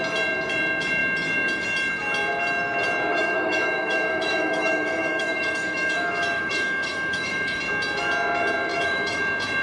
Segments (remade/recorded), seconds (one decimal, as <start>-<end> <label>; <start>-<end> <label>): 0.0-3.1 recorded; 3.1-7.6 remade; 7.6-8.7 recorded; 8.7-9.2 remade; 9.2-9.6 recorded